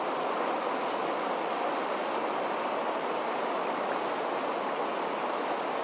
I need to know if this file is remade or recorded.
recorded